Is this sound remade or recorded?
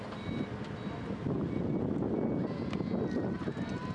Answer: recorded